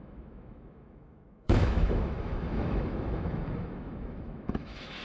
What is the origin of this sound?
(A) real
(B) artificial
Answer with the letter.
B